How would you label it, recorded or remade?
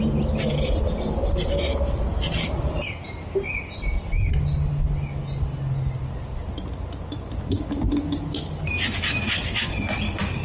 recorded